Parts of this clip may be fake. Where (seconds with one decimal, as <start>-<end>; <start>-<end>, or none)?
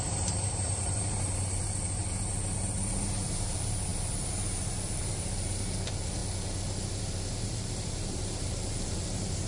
0.0-2.0; 2.7-6.2; 7.4-9.5